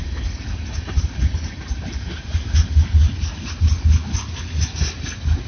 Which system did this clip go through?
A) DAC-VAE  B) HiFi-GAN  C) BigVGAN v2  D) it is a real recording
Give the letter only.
D